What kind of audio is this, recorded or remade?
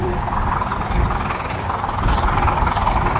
recorded